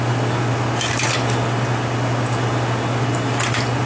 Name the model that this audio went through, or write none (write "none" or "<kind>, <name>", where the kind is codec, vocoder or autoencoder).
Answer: none